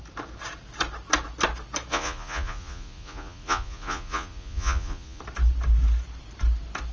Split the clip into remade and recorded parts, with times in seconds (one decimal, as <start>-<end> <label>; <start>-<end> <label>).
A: 0.0-1.9 recorded; 1.9-5.2 remade; 5.2-6.9 recorded